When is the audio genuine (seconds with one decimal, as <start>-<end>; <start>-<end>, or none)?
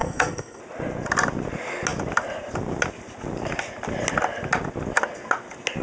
0.6-5.8